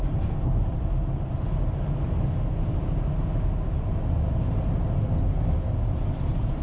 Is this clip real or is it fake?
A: real